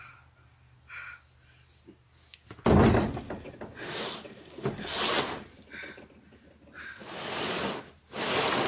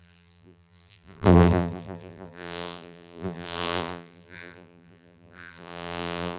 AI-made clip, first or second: second